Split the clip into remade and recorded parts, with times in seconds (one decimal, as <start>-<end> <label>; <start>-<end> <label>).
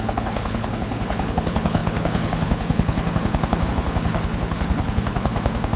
0.0-5.3 remade; 5.3-5.8 recorded